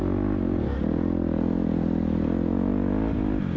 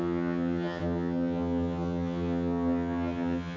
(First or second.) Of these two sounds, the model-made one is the second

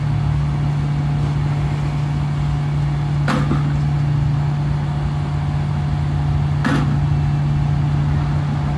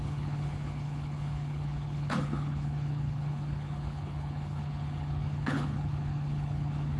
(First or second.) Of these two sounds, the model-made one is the second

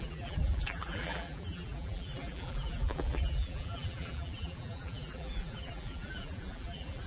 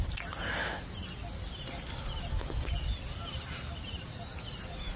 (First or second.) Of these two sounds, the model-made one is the first